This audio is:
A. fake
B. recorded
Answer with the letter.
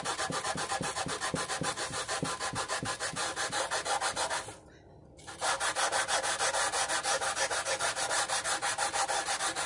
B